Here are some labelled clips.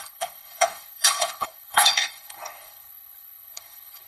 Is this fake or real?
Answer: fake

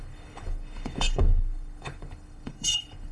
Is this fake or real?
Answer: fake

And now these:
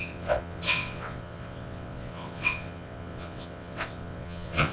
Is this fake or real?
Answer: fake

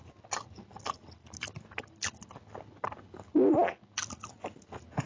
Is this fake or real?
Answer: real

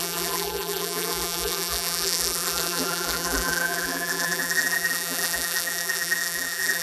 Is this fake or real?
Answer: fake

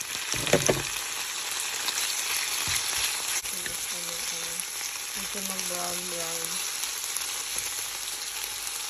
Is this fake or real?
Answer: real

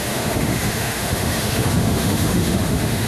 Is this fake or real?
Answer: fake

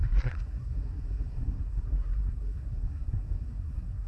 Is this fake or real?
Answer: fake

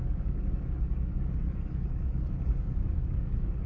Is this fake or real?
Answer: fake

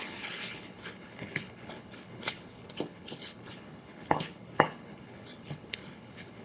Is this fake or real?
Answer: fake